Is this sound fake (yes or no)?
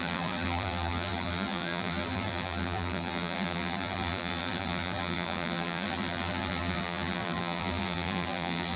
yes